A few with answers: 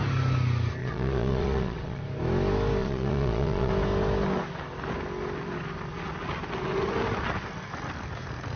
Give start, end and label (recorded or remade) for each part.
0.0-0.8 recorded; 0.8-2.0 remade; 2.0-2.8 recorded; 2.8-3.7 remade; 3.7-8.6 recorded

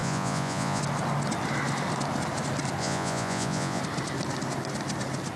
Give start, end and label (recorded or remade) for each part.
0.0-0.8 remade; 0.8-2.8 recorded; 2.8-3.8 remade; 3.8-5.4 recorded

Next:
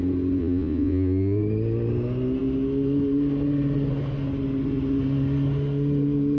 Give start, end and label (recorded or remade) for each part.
0.0-0.4 recorded; 0.4-1.4 remade; 1.4-6.4 recorded